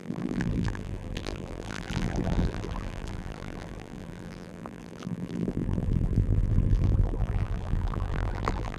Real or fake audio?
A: fake